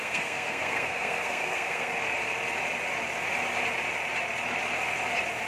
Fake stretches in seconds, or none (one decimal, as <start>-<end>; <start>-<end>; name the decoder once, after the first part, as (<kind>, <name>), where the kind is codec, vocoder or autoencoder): 0.0-1.9 (codec, SNAC)